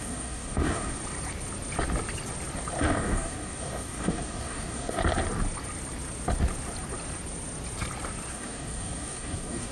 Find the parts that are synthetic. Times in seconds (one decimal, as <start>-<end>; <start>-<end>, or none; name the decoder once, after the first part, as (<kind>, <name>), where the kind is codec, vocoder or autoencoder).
0.0-1.0 (codec, DAC); 2.8-5.0; 8.3-9.7